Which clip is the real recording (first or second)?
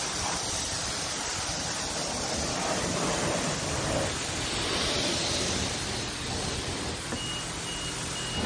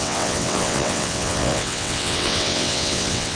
first